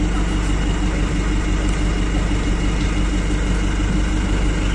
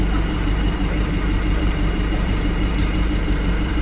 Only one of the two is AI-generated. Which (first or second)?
second